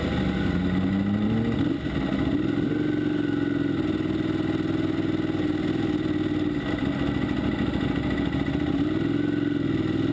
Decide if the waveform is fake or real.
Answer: real